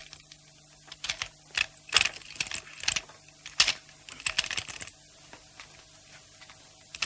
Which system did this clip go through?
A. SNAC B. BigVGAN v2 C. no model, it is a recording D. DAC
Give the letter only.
C